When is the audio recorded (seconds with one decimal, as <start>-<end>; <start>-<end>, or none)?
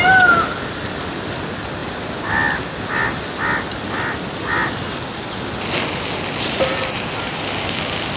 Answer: 0.0-8.2